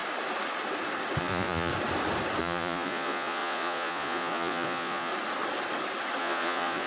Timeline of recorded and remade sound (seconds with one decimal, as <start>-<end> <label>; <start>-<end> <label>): 0.0-1.2 recorded; 1.2-1.7 remade; 1.7-2.4 recorded; 2.4-5.1 remade; 5.1-6.2 recorded; 6.2-6.9 remade